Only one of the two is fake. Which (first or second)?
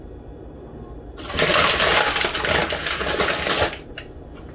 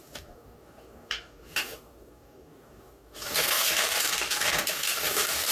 second